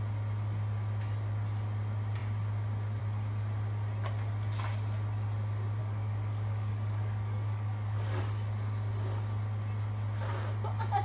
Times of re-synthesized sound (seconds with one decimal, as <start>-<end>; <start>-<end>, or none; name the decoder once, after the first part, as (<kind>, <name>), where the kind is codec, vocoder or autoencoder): 5.8-8.2 (codec, DAC)